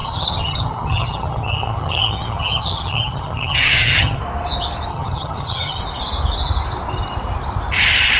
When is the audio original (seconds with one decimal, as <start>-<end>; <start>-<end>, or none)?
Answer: 4.2-4.9; 5.8-8.2